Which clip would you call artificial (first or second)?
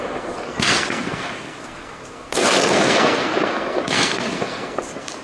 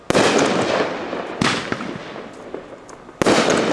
first